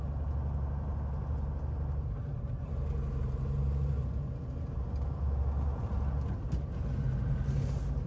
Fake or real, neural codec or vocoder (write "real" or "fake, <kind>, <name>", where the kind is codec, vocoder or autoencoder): real